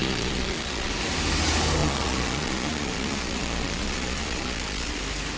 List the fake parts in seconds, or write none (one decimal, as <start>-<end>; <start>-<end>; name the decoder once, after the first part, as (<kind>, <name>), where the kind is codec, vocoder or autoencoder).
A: 0.0-0.9 (vocoder, Vocos); 1.8-5.0